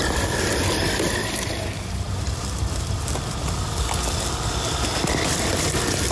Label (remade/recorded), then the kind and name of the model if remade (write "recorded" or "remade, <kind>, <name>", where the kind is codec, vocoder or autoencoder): recorded